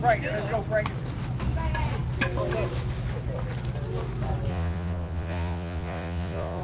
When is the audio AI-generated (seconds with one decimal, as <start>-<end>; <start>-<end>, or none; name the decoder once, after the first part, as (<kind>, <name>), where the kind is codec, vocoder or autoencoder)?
4.5-6.6 (vocoder, Vocos)